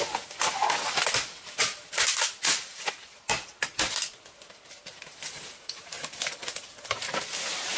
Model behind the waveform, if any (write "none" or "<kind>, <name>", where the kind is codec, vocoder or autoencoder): none